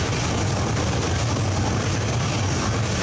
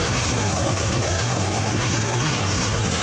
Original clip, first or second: first